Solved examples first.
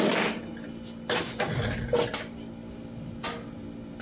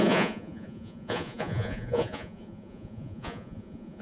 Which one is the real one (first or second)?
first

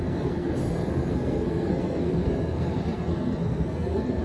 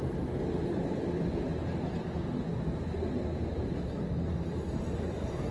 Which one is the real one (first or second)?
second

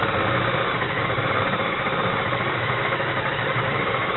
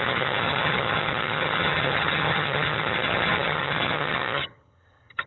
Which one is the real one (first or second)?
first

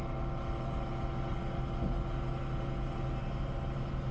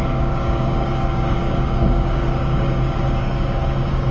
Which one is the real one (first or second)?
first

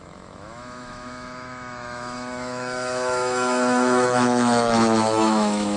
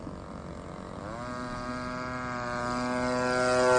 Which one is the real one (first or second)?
second